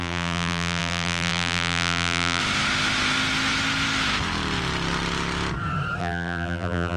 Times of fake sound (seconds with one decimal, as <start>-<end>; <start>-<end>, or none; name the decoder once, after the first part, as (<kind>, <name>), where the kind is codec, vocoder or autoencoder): 0.0-2.4 (vocoder, BigVGAN v2); 6.0-7.0